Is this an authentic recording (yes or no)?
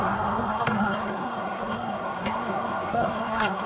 no